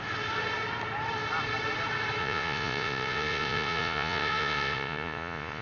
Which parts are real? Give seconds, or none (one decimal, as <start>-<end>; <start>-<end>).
0.0-2.2